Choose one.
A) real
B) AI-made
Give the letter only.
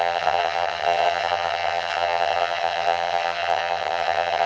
B